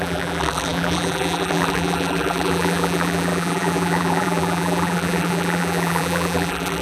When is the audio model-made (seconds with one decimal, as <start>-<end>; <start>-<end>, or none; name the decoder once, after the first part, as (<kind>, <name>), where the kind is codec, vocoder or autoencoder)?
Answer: 0.0-6.8 (vocoder, BigVGAN v2)